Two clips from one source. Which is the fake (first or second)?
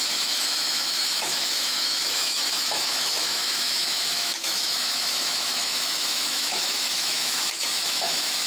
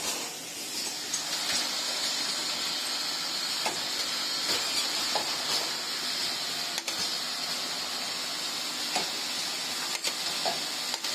first